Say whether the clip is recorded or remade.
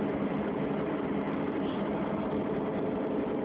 recorded